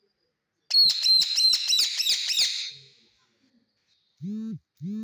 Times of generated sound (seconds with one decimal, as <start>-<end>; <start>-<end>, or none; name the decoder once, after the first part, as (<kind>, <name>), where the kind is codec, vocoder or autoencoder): none